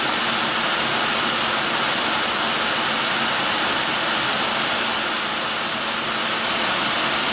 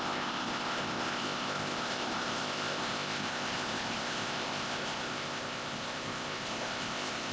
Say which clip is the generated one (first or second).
second